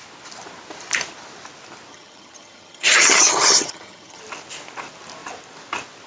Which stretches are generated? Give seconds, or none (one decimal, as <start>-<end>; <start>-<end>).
1.9-4.2